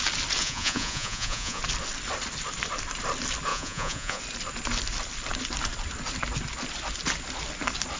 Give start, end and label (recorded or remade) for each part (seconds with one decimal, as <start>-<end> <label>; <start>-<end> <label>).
0.0-0.4 recorded; 0.4-1.6 remade; 1.6-3.5 recorded; 3.5-4.2 remade; 4.2-8.0 recorded